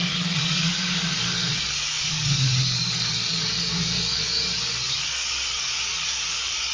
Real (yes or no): no